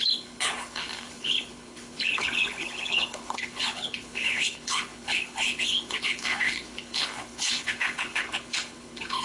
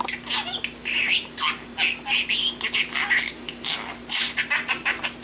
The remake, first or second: first